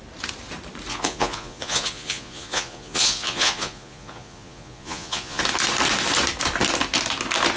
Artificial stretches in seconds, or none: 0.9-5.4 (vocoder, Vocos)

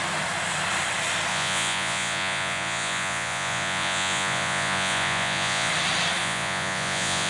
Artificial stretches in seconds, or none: 1.3-5.7 (vocoder, Vocos); 6.2-7.3